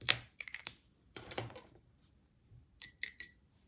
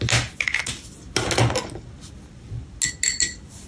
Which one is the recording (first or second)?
second